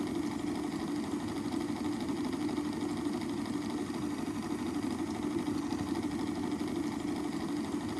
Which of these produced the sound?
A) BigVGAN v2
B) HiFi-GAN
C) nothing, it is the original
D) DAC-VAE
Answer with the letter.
C